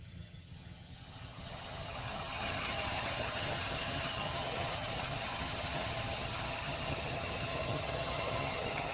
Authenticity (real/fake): fake